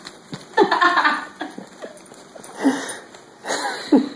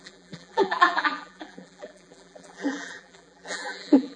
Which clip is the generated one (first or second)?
second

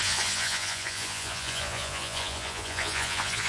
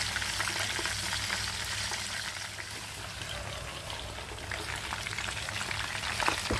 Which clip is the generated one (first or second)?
first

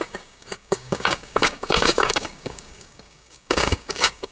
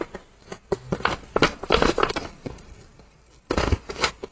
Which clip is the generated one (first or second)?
first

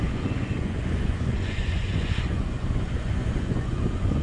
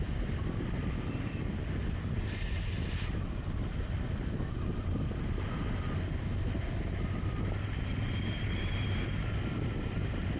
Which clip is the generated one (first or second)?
first